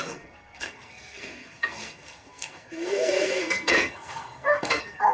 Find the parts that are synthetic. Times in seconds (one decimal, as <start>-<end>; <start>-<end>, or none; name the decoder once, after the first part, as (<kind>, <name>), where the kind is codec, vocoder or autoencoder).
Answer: 0.0-5.1 (codec, SNAC)